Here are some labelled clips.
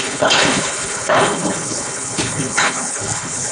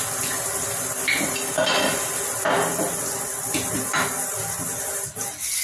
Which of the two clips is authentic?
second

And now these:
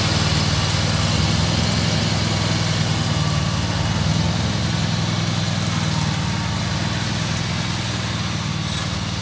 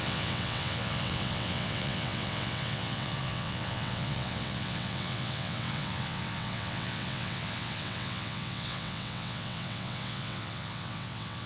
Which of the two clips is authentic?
first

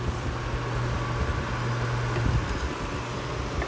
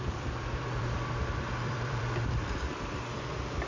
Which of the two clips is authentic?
first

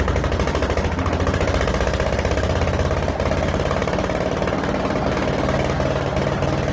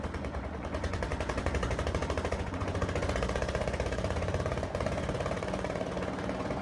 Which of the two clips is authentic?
first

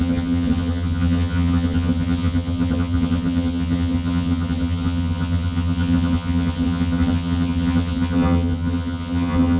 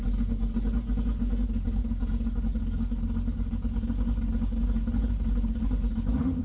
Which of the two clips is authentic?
second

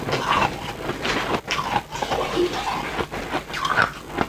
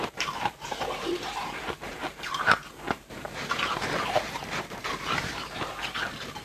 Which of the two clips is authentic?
first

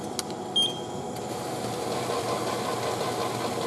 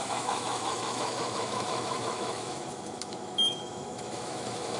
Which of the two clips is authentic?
first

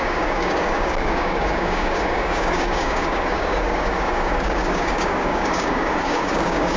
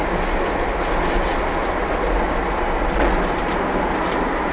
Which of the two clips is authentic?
second